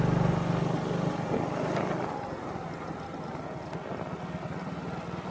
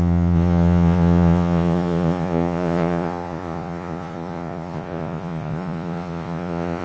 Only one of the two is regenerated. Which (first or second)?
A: second